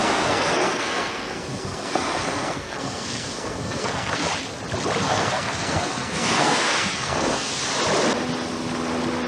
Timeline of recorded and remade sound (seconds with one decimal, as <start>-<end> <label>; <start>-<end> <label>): 0.0-4.3 remade; 4.3-5.0 recorded; 5.0-7.6 remade; 7.6-9.3 recorded